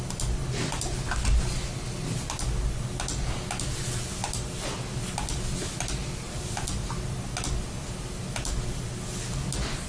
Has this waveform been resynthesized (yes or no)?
no